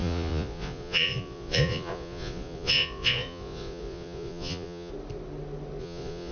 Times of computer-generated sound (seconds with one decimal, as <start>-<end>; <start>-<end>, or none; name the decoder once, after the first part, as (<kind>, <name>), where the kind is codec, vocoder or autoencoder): 0.0-4.9 (vocoder, Vocos); 5.8-6.3